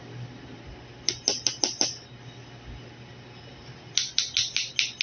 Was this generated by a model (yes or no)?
no